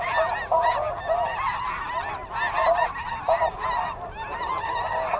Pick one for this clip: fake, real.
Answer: real